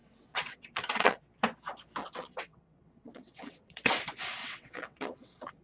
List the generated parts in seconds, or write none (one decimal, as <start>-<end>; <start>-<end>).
0.0-1.2; 2.0-3.9; 4.4-5.6